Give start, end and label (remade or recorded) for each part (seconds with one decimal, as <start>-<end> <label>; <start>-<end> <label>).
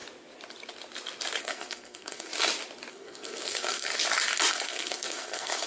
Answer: 0.0-1.4 recorded; 1.4-2.3 remade; 2.3-2.9 recorded; 2.9-3.9 remade; 3.9-4.5 recorded; 4.5-5.7 remade